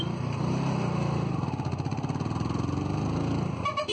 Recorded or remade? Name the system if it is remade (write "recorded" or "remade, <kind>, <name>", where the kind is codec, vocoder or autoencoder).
recorded